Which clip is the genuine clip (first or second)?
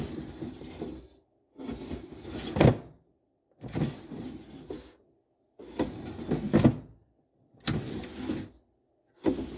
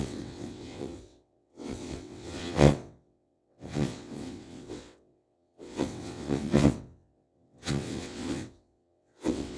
first